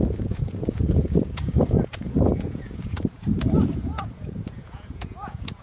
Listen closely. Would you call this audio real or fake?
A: fake